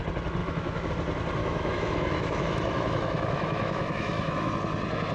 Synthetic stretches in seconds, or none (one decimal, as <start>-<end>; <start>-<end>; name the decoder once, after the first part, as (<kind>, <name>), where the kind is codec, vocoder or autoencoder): 0.4-0.9 (autoencoder, DAC-VAE); 1.4-4.5